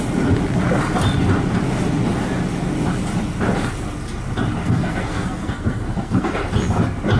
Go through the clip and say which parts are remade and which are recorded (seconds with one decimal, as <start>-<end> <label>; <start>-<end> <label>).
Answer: 0.0-4.6 recorded; 4.6-6.3 remade; 6.3-7.2 recorded